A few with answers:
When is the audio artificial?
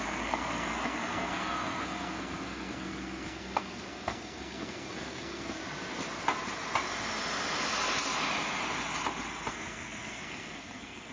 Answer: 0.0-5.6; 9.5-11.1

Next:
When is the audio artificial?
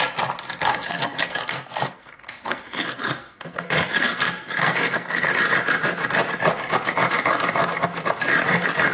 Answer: 0.7-5.3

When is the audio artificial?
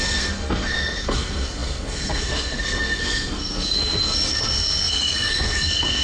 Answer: 0.0-6.0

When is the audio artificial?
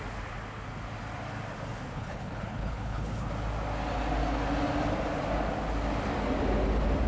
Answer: 1.9-3.3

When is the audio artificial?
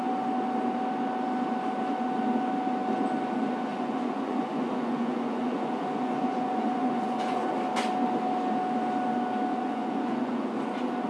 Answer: 3.7-7.5; 9.5-10.5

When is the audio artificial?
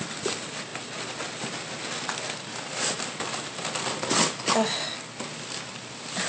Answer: none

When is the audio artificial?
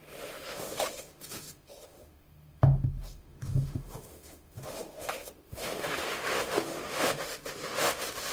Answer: 0.0-8.3